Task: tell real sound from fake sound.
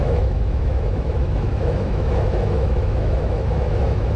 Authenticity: fake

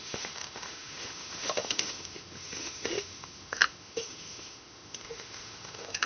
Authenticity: fake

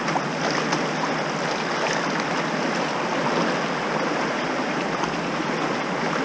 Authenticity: real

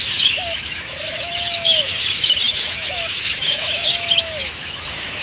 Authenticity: fake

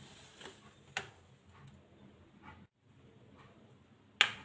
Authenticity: real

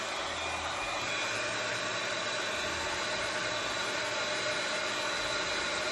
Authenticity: real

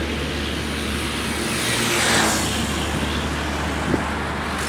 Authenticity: real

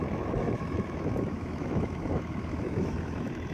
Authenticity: fake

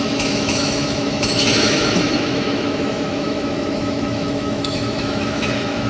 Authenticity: fake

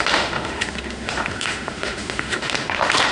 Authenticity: fake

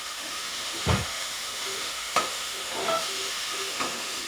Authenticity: fake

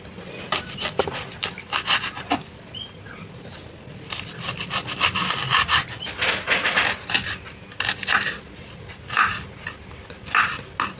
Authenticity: real